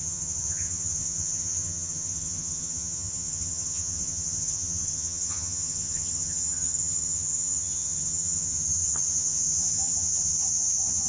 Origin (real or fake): fake